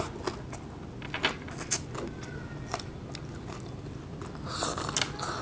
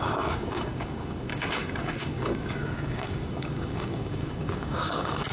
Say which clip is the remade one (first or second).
second